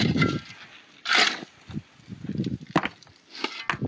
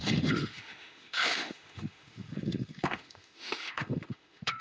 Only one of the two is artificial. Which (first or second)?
second